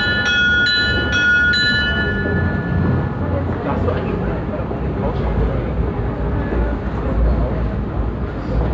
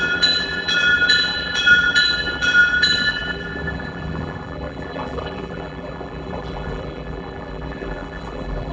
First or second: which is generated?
second